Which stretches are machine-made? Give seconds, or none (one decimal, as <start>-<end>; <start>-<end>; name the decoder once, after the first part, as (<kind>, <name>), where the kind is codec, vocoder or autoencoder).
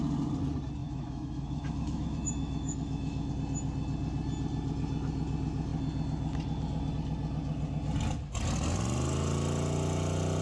0.8-3.3 (autoencoder, DAC-VAE)